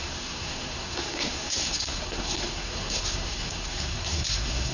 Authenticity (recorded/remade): remade